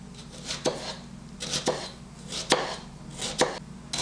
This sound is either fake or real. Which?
real